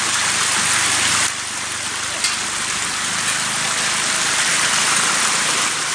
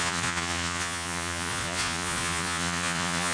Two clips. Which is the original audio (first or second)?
first